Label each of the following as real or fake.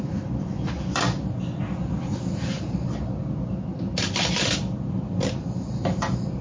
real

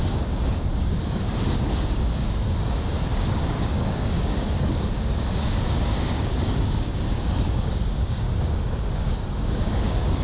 fake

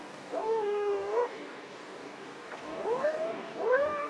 fake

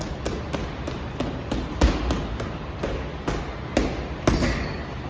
real